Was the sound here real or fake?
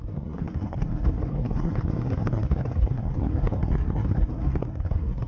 fake